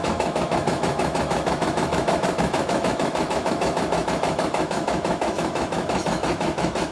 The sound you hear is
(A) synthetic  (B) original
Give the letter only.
A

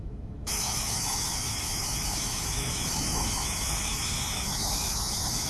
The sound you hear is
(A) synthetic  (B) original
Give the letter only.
A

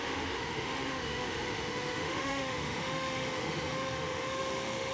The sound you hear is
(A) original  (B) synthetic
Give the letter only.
B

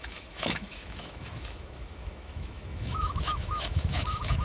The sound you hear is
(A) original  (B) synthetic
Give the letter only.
B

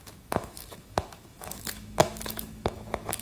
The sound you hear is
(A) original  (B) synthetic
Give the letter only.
B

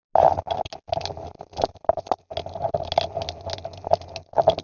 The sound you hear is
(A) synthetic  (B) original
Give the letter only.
B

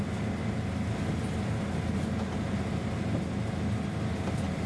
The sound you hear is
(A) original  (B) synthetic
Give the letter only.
A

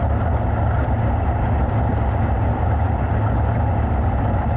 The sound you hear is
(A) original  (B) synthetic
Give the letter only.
A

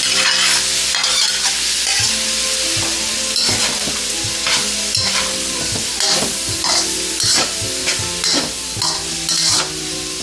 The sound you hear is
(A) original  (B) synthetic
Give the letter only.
A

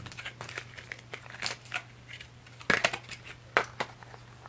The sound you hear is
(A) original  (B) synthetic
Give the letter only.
A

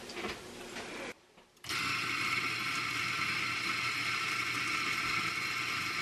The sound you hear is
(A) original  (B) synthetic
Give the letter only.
A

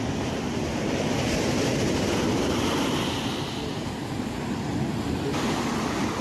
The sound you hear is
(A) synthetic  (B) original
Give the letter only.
B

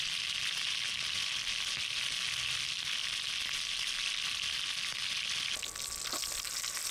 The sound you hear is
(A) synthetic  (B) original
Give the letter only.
B